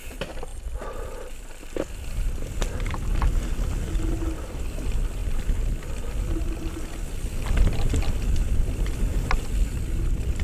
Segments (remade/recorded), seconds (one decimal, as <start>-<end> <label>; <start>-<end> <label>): 0.0-10.4 recorded